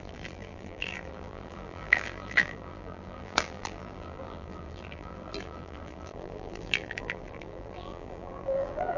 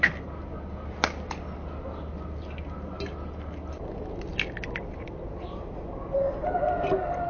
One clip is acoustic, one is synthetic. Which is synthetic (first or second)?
first